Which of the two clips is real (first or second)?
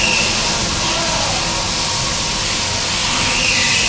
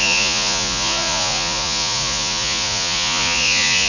first